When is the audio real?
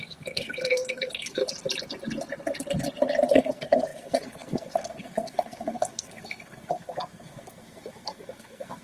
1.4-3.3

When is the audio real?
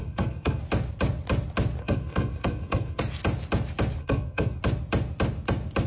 0.6-1.8; 3.0-4.0; 4.6-5.9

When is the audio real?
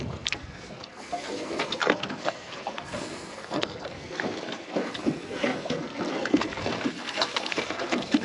none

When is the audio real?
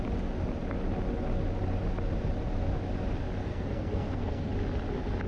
0.0-3.4; 4.5-5.3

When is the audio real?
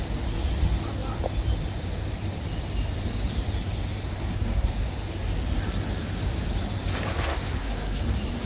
0.0-4.2; 4.7-7.1; 8.0-8.5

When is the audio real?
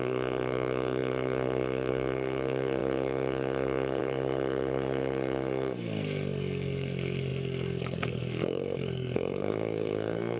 none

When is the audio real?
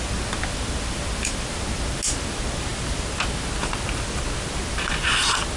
0.0-5.6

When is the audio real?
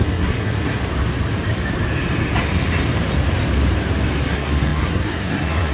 0.8-4.2